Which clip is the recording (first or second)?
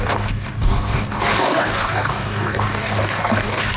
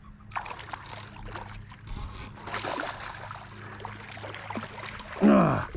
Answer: second